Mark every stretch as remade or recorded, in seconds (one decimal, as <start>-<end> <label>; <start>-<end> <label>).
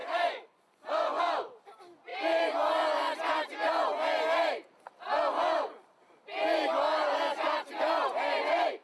0.0-1.2 remade; 1.2-8.8 recorded